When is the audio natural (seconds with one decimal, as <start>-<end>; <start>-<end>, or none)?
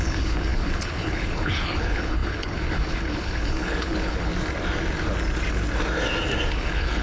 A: 4.3-6.5